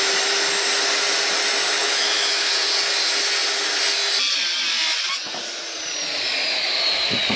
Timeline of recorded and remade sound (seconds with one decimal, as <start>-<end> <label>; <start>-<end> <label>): 0.0-1.8 recorded; 1.8-2.5 remade; 2.5-7.4 recorded